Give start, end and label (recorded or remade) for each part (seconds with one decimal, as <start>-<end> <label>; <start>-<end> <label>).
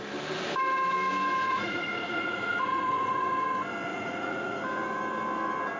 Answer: 0.0-1.5 recorded; 1.5-3.3 remade; 3.3-3.9 recorded; 3.9-4.6 remade; 4.6-5.8 recorded